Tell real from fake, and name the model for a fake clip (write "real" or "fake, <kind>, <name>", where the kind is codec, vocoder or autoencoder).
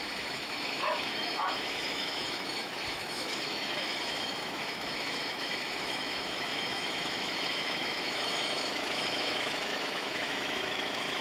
fake, autoencoder, DAC-VAE